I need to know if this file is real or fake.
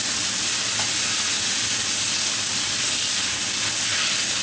real